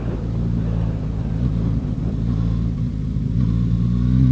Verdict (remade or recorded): recorded